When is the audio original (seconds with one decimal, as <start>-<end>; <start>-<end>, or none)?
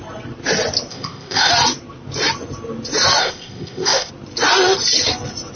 0.0-0.9; 1.5-3.2; 4.1-5.6